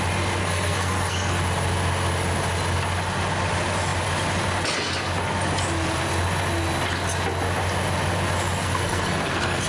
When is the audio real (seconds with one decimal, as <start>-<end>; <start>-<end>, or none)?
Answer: 0.0-0.4; 1.4-8.6